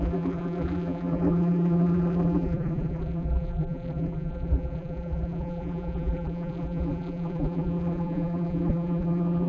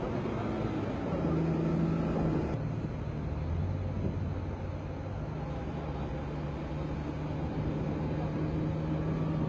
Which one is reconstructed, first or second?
first